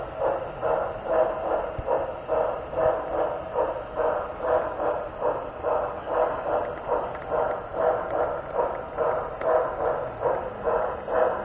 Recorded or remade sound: recorded